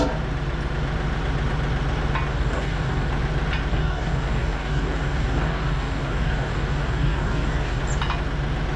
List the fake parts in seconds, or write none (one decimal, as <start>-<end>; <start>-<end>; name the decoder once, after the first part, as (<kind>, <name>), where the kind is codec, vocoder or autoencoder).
2.3-3.1 (codec, DAC); 3.7-7.8